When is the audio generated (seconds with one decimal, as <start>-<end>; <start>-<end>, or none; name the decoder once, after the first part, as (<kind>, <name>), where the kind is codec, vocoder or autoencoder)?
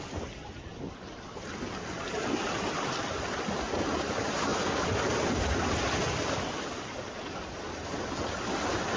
none